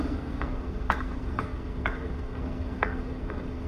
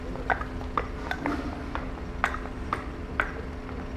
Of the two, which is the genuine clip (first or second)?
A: second